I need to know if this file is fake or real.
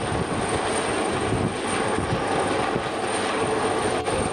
real